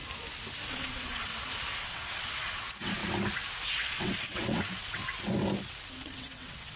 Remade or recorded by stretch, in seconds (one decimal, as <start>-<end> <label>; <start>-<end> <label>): 0.0-0.7 recorded; 0.7-1.3 remade; 1.3-1.8 recorded; 1.8-3.0 remade; 3.0-3.7 recorded; 3.7-5.0 remade; 5.0-5.9 recorded; 5.9-6.8 remade